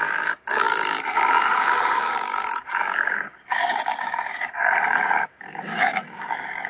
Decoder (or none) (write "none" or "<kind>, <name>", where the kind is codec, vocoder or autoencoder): codec, DAC